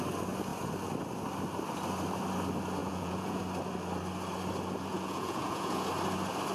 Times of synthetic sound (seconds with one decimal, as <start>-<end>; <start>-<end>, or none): 2.8-3.4; 4.9-5.9